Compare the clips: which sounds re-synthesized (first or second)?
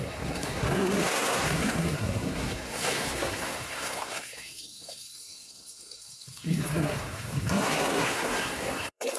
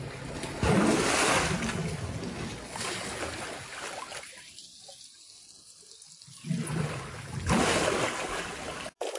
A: first